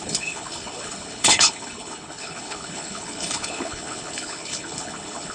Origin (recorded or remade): remade